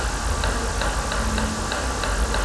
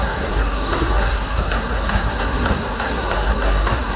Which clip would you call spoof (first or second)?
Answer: second